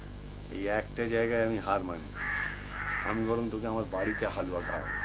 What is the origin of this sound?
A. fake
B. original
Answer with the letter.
A